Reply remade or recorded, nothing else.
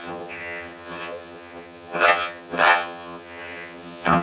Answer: remade